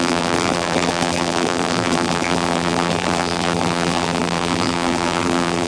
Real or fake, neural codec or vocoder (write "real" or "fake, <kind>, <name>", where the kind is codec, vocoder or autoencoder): fake, vocoder, BigVGAN v2